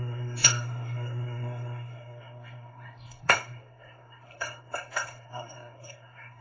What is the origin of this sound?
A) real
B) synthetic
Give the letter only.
B